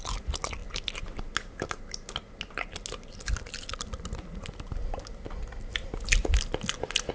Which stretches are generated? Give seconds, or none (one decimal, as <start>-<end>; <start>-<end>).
none